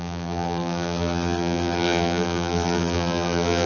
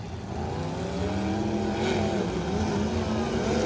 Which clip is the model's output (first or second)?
first